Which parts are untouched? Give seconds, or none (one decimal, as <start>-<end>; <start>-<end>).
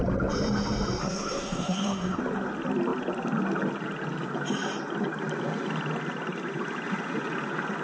0.0-1.0; 2.2-7.8